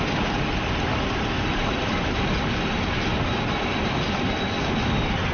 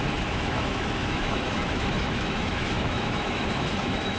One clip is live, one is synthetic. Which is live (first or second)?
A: first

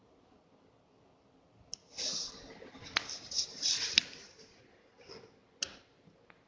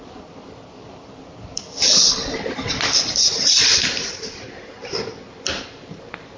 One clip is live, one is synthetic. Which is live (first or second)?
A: first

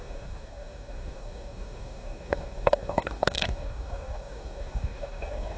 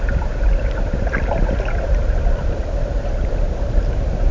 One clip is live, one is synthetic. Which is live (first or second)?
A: second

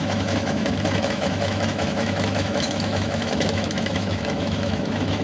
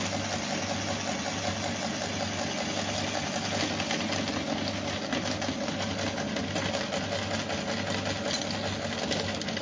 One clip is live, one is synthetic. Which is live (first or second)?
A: second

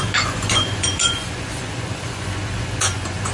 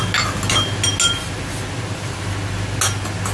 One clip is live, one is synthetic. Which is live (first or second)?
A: second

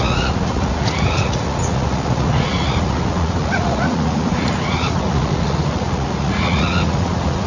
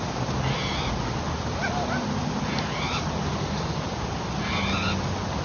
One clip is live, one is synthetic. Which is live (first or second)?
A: second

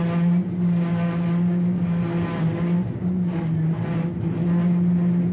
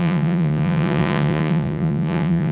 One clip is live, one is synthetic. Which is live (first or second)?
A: first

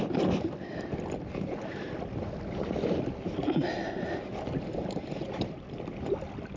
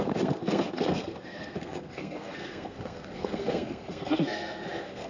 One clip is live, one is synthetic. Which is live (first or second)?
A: first